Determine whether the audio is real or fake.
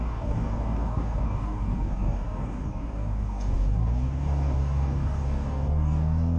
fake